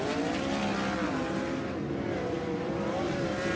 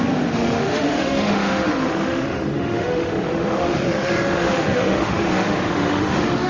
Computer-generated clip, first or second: second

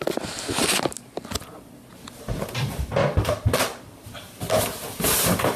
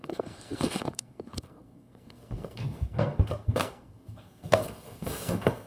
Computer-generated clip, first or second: second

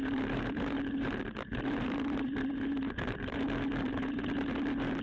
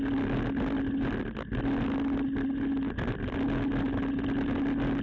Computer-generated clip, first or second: first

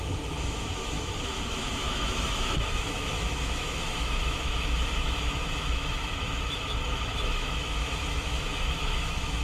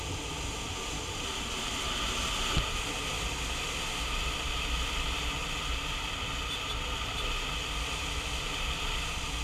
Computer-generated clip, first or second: first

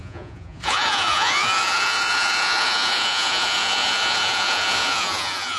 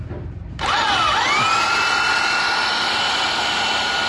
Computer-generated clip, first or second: first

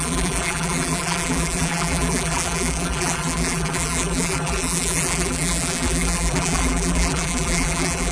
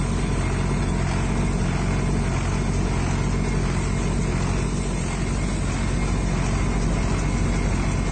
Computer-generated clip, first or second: first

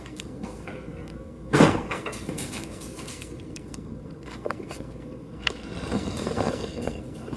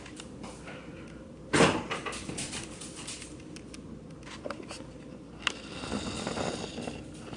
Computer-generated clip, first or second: first